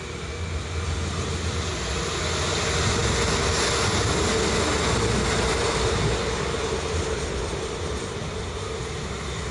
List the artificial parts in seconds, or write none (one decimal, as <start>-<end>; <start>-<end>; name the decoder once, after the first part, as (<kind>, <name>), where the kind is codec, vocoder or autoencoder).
none